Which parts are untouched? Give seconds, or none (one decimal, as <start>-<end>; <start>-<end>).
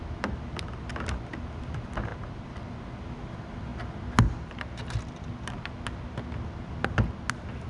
0.0-2.1; 2.7-7.7